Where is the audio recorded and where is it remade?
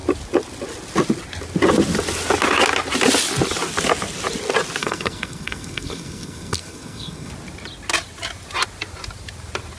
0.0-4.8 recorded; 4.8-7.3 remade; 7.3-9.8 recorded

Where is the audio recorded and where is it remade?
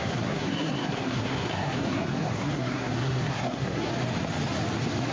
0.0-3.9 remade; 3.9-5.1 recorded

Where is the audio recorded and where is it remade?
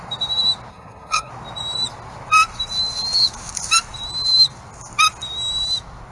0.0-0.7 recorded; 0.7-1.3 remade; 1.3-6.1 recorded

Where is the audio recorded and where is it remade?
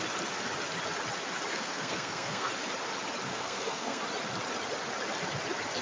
0.0-1.5 recorded; 1.5-2.5 remade; 2.5-3.3 recorded; 3.3-4.0 remade; 4.0-5.8 recorded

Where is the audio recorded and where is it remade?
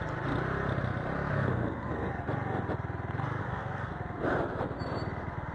0.0-1.3 recorded; 1.3-2.1 remade; 2.1-3.4 recorded; 3.4-3.9 remade; 3.9-5.5 recorded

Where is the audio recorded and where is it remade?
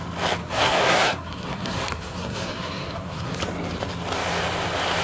0.0-0.4 recorded; 0.4-3.4 remade; 3.4-5.0 recorded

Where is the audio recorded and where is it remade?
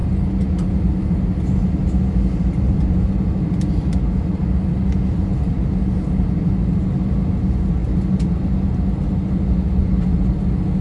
0.0-10.8 recorded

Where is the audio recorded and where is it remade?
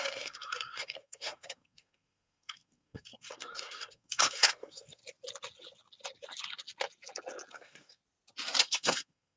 0.0-5.0 remade; 5.0-7.5 recorded; 7.5-8.0 remade; 8.0-8.6 recorded; 8.6-9.4 remade